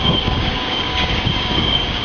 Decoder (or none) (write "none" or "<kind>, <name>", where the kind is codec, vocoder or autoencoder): codec, DAC